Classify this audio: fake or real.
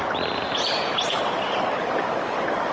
real